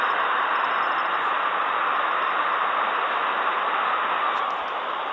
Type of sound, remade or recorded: recorded